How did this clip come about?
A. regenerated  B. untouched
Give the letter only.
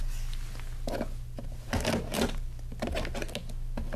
B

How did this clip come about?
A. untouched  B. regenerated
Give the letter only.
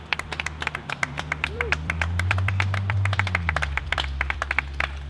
B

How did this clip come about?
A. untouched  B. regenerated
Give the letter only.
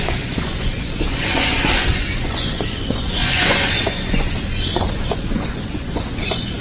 B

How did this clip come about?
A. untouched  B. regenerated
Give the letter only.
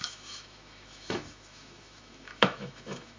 B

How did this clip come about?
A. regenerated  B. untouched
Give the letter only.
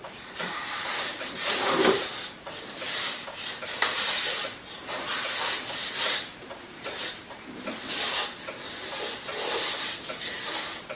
A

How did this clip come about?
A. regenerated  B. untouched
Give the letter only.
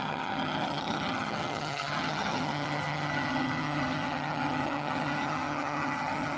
A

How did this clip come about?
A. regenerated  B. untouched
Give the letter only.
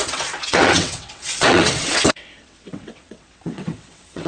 A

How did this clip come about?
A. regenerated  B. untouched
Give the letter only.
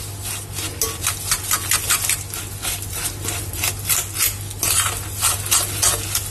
B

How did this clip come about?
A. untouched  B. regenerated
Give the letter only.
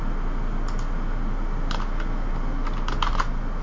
A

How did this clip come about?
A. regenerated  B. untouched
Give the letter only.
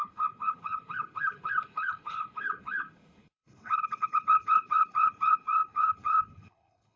A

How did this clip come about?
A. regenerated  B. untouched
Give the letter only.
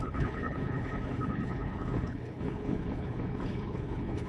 A